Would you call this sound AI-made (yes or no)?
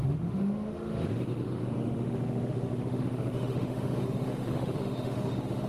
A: yes